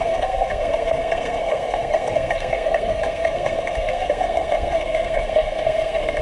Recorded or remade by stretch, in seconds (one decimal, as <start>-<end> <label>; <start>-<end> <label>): 0.0-6.2 remade